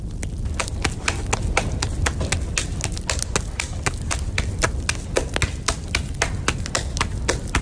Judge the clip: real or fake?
real